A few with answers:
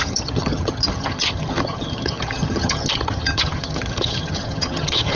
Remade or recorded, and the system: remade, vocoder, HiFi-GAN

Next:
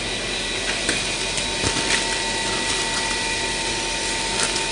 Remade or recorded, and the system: recorded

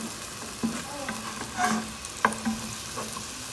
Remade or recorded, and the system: recorded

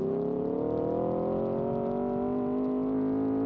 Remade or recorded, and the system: recorded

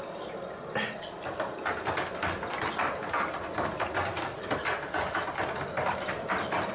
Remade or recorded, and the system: recorded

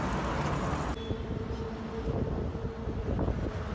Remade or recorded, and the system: recorded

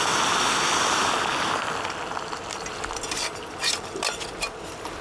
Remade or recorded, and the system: recorded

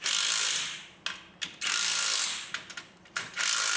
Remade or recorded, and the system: recorded